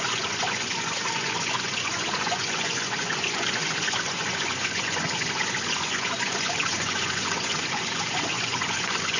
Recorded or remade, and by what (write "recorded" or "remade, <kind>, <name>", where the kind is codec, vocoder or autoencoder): remade, vocoder, Vocos